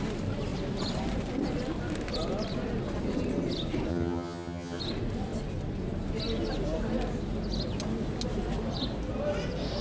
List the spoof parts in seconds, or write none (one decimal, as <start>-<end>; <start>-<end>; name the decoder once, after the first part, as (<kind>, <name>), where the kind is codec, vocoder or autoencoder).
3.9-4.8 (vocoder, HiFi-GAN)